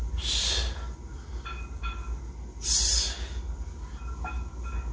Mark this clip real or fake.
real